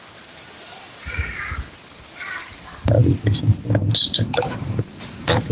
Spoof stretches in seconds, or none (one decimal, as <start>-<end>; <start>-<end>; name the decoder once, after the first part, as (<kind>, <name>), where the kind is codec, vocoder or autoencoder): 0.0-3.0 (vocoder, BigVGAN v2); 4.1-5.5